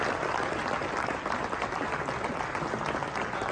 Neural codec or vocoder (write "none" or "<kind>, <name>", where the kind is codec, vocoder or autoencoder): none